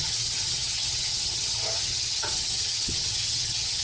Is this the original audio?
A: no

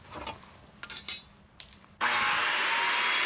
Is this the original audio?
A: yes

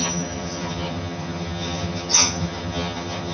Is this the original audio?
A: no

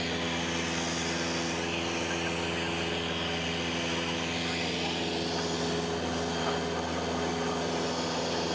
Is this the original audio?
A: yes